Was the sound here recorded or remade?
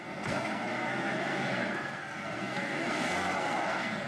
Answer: remade